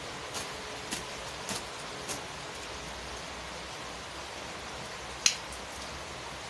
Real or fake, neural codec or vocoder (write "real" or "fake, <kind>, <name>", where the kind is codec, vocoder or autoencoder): real